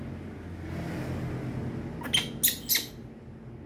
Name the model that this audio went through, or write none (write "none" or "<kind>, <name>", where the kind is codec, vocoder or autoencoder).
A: none